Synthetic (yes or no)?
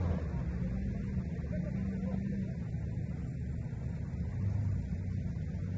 no